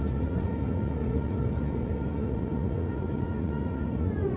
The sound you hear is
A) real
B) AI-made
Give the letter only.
B